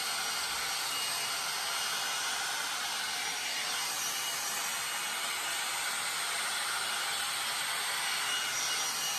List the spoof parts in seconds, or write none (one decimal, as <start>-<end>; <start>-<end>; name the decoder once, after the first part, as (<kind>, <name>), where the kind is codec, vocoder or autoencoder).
none